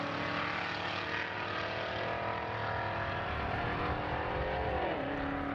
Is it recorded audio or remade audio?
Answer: recorded